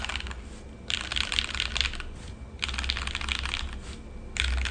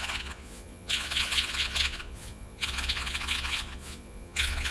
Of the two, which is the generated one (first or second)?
second